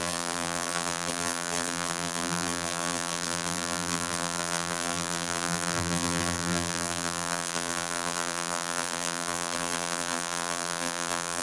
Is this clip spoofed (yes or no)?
yes